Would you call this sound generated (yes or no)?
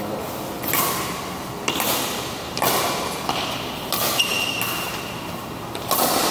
no